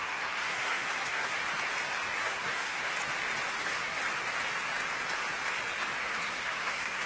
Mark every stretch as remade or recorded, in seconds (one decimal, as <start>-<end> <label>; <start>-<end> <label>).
0.0-1.4 remade; 1.4-2.2 recorded; 2.2-2.9 remade; 2.9-3.6 recorded; 3.6-4.0 remade; 4.0-6.0 recorded; 6.0-7.1 remade